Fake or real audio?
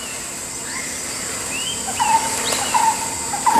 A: real